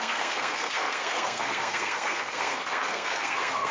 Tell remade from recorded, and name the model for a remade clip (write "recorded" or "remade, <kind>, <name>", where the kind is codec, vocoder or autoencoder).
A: remade, codec, SNAC